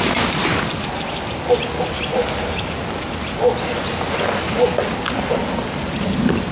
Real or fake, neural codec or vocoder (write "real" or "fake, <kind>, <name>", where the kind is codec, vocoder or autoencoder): real